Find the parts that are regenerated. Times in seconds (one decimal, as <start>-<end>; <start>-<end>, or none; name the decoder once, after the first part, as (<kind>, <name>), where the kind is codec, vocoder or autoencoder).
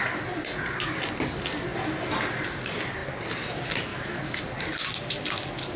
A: 3.9-4.4 (autoencoder, DAC-VAE)